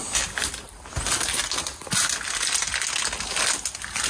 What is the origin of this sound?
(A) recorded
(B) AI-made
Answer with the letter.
A